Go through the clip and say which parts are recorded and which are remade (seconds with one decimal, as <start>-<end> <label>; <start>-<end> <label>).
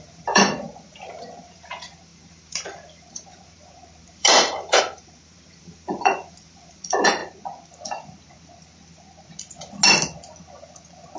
0.0-7.2 remade; 7.2-11.2 recorded